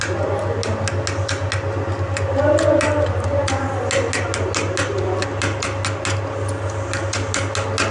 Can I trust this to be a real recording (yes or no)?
yes